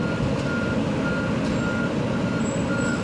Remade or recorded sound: recorded